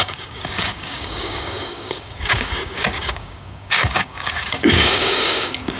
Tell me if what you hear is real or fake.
fake